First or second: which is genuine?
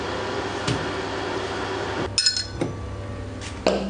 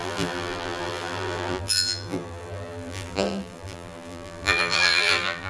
first